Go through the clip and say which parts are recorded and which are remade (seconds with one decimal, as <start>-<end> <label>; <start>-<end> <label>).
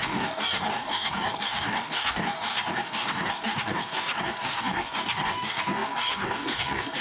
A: 0.0-7.0 remade